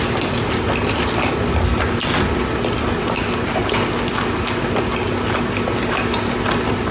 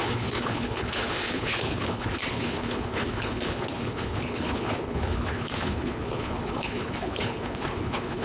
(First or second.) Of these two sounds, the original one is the first